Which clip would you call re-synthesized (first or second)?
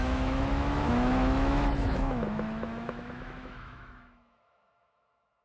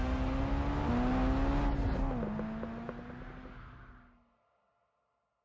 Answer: first